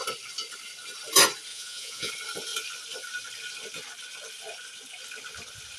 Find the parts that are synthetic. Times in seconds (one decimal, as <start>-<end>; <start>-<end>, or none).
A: 1.5-2.1

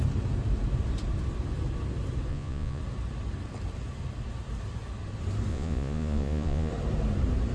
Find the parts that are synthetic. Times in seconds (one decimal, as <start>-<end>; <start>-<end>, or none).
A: 2.3-2.8; 5.5-6.7

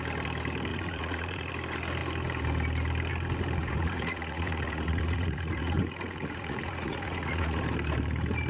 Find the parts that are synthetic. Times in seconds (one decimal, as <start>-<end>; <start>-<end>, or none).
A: 0.7-1.5; 3.6-7.6

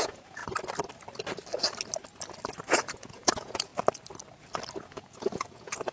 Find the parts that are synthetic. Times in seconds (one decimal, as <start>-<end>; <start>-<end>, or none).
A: 0.0-0.4; 2.7-3.7; 4.8-5.9

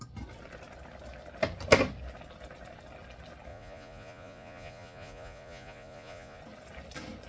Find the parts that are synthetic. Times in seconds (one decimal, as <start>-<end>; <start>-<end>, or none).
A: 3.5-6.4